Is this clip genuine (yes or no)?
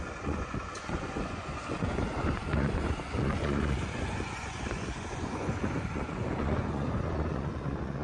no